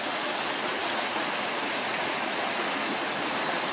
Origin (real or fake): fake